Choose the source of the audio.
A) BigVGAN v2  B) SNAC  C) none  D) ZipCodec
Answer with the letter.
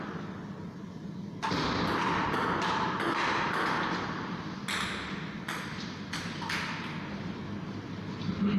C